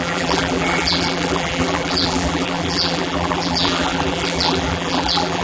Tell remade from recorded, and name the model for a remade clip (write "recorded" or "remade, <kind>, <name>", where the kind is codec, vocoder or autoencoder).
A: remade, vocoder, BigVGAN v2